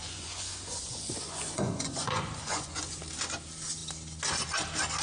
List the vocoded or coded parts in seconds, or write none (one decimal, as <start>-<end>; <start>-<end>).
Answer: 0.0-3.0